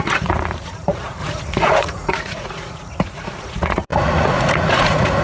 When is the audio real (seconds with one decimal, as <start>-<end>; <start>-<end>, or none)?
none